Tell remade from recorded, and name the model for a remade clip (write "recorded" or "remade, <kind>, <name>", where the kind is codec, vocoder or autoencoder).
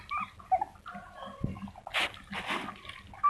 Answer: recorded